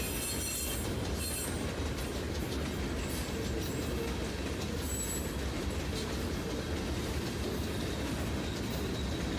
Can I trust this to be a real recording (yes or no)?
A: yes